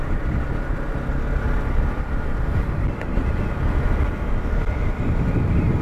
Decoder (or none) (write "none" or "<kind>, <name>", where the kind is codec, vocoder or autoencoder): none